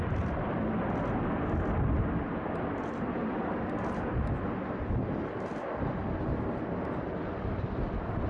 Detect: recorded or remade recorded